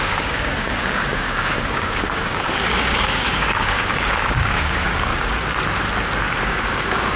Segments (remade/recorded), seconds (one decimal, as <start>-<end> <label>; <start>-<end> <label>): 0.0-5.1 remade; 5.1-6.4 recorded; 6.4-7.2 remade